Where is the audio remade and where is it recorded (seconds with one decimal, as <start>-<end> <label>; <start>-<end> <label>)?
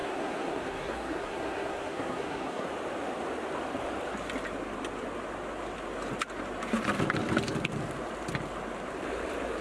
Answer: 0.0-2.7 remade; 2.7-9.6 recorded